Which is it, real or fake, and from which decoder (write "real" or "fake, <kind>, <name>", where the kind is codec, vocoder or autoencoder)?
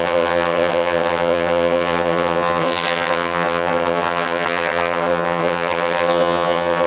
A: fake, vocoder, HiFi-GAN